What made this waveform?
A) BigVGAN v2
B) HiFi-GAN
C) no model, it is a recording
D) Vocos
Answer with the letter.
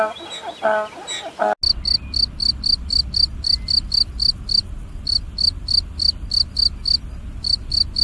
C